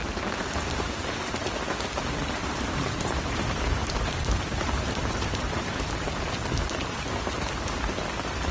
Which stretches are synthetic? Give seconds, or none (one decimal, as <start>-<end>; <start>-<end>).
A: 2.4-6.1